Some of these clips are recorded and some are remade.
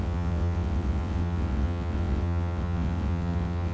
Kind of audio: remade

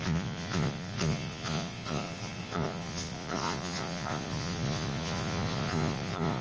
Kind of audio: remade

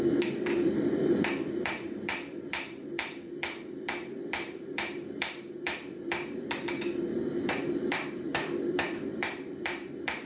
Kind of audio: remade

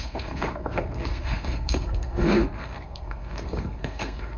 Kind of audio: remade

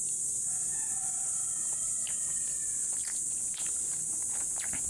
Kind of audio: recorded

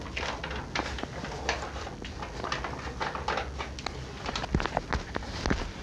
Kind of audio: recorded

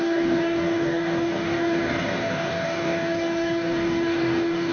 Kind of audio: remade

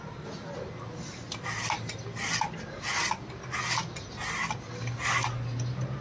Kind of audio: recorded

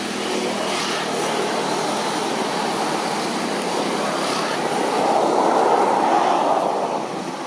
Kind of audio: recorded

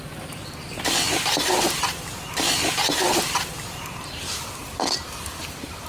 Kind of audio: remade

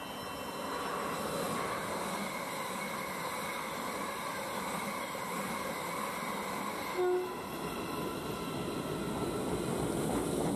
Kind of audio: recorded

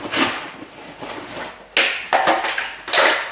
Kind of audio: recorded